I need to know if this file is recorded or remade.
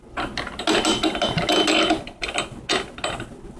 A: recorded